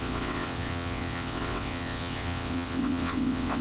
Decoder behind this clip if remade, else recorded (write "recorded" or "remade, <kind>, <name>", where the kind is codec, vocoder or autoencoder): remade, vocoder, WaveNeXt